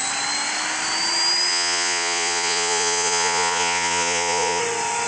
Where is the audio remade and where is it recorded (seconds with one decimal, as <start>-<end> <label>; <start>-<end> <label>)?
0.0-1.5 recorded; 1.5-4.6 remade; 4.6-5.1 recorded